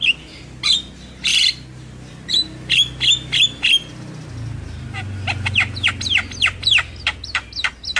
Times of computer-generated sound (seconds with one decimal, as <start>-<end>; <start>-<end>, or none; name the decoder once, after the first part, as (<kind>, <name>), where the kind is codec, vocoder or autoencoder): none